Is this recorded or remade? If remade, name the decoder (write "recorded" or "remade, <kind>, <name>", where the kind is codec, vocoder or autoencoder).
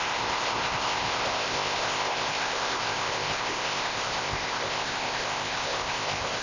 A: remade, codec, ZipCodec